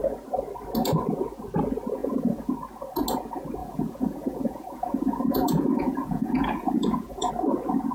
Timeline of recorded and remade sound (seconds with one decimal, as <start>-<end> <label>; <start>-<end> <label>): 0.0-2.0 recorded; 2.0-2.5 remade; 2.5-3.6 recorded; 3.6-7.3 remade; 7.3-7.9 recorded